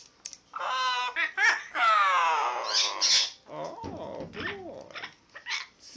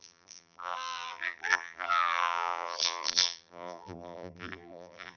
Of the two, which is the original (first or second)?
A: first